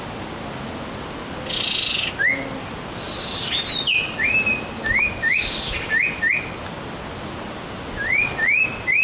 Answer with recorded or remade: recorded